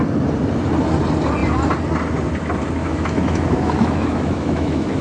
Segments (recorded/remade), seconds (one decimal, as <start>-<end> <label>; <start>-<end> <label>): 0.0-2.8 recorded; 2.8-5.0 remade